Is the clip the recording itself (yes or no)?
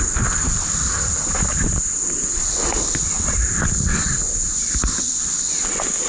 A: yes